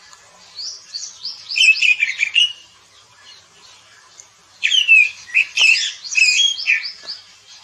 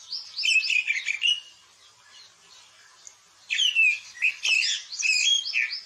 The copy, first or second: first